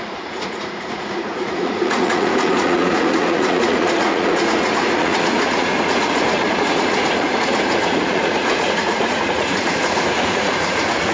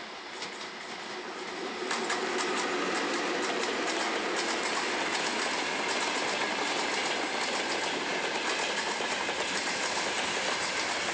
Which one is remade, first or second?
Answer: first